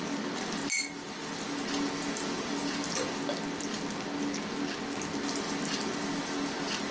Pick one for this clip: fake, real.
real